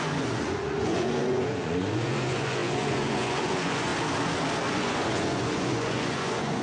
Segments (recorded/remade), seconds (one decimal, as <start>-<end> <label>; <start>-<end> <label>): 0.0-3.9 remade; 3.9-4.7 recorded; 4.7-6.6 remade